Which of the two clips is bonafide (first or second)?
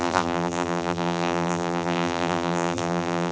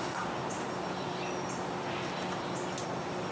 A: second